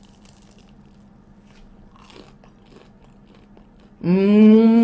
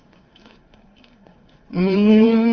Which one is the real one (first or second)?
first